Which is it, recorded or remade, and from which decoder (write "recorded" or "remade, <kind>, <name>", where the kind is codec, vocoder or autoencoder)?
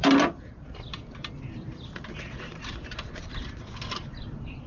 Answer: remade, vocoder, BigVGAN v2